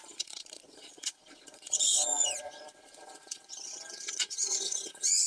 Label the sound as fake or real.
fake